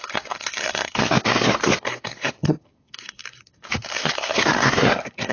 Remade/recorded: remade